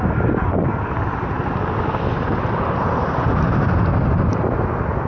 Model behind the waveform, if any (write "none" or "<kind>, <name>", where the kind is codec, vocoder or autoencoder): none